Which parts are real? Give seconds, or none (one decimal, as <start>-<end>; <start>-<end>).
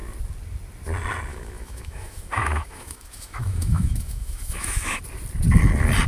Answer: 0.0-1.3; 5.0-6.1